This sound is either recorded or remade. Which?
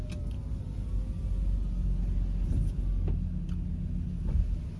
recorded